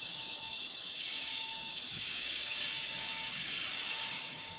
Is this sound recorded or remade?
remade